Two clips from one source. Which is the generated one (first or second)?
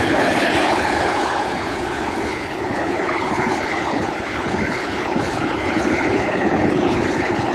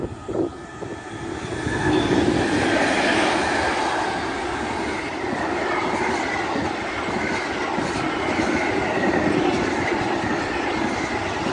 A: first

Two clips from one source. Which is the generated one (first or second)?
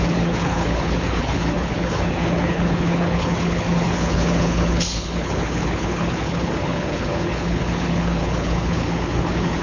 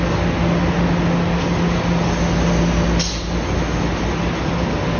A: first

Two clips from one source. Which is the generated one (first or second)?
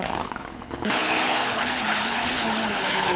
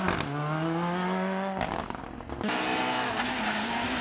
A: first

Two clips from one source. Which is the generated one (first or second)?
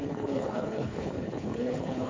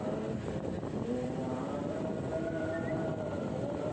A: first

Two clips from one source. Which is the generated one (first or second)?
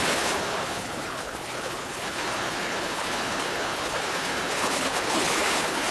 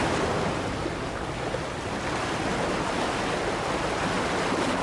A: first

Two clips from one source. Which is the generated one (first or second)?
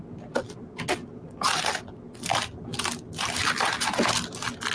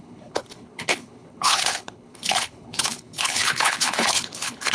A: second